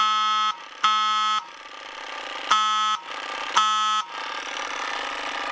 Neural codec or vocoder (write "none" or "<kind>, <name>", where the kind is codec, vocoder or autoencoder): none